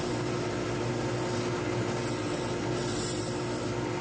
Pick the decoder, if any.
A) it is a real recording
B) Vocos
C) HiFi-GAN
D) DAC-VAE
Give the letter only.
A